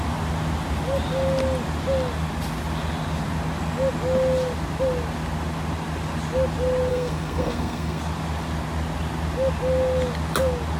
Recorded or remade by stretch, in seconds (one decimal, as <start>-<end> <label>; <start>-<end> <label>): 0.0-6.9 recorded; 6.9-8.0 remade; 8.0-10.8 recorded